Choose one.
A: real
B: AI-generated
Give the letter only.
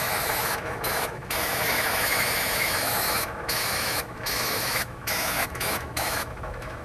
B